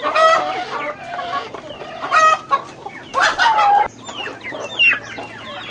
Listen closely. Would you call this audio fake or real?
real